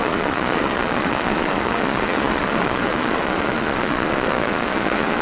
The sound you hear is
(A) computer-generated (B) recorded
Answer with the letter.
A